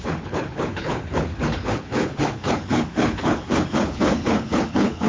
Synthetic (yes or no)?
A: yes